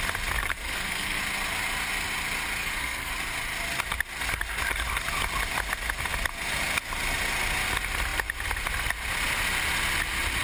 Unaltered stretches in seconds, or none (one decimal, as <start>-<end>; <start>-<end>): 0.0-0.4; 1.2-2.6; 3.1-10.4